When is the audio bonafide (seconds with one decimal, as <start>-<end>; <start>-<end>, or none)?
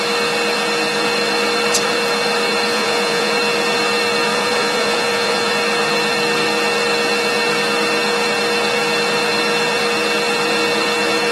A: 0.0-2.7; 3.3-4.3; 5.5-11.3